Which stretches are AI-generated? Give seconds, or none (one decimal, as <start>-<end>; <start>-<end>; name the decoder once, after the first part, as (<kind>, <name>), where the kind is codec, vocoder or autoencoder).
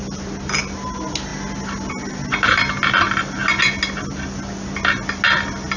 none